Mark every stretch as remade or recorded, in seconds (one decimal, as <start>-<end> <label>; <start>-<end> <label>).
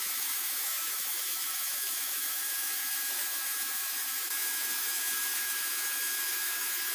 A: 0.0-6.9 remade